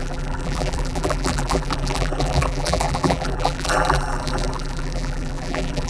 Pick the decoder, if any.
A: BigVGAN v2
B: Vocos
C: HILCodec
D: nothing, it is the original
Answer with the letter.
A